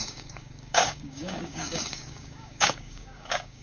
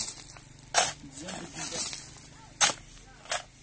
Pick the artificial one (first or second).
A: first